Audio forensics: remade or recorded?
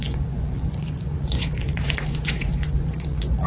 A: remade